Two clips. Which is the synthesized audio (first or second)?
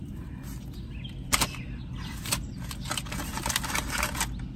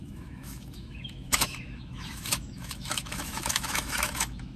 second